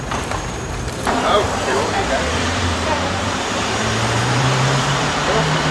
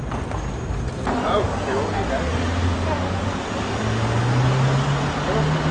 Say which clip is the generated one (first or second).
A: first